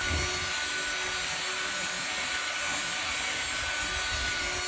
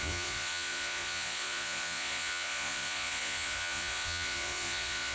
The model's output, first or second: second